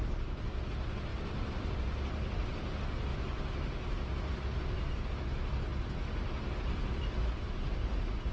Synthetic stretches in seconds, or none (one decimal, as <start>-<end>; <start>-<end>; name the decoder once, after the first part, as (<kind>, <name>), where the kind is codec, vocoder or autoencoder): 1.1-2.7 (vocoder, BigVGAN v2); 3.1-5.1; 5.7-6.8